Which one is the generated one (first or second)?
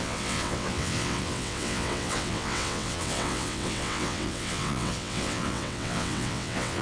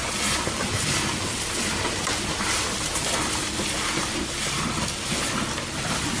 first